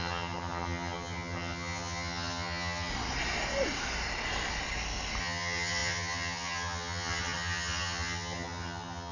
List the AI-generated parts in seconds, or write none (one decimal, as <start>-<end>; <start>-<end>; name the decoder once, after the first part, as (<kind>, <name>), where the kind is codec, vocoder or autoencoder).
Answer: 0.0-2.9 (vocoder, HiFi-GAN); 5.2-9.1